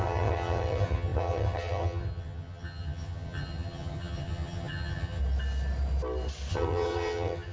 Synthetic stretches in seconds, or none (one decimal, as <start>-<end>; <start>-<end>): 0.0-5.2; 6.5-7.5